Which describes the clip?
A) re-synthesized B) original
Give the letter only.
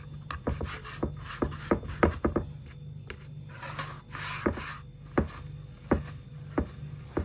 B